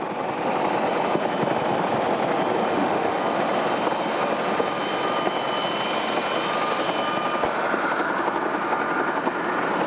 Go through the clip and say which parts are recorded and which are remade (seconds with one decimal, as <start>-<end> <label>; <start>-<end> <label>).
0.0-2.7 recorded; 2.7-3.2 remade; 3.2-9.9 recorded